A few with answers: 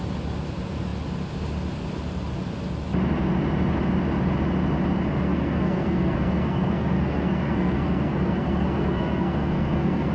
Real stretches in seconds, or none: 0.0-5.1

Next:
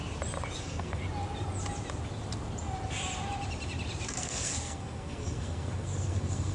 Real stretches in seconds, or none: 0.0-0.6; 1.0-4.1